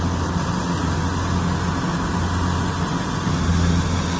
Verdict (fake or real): real